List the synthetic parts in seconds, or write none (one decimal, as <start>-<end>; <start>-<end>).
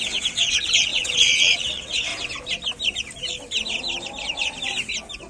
0.0-2.1